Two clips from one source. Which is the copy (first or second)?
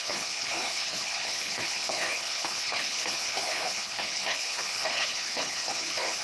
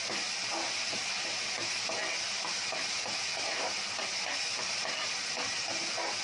first